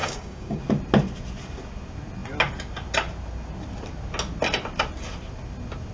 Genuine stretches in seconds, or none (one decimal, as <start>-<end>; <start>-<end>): 0.6-5.9